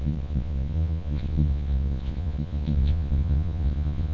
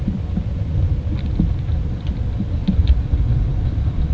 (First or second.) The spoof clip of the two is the first